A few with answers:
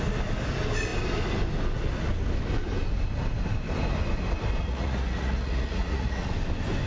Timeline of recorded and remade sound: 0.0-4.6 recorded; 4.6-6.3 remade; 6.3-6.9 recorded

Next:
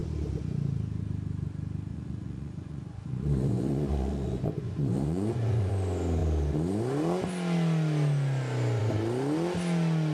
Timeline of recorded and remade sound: 0.0-1.9 recorded; 1.9-5.7 remade; 5.7-10.1 recorded

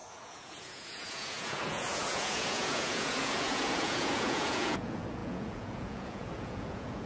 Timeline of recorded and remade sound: 0.0-7.1 remade

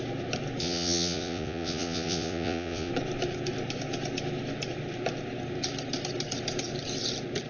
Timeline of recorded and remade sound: 0.0-0.6 recorded; 0.6-2.9 remade; 2.9-7.5 recorded

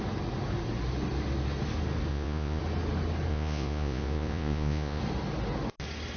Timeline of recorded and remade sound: 0.0-2.1 recorded; 2.1-2.6 remade; 2.6-3.3 recorded; 3.3-5.0 remade; 5.0-6.2 recorded